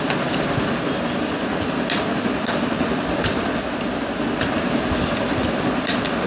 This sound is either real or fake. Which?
real